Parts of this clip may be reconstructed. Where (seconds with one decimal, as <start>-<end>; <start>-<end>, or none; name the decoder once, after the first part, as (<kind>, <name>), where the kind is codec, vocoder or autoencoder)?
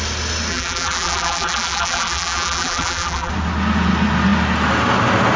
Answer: 0.5-3.3 (vocoder, BigVGAN v2)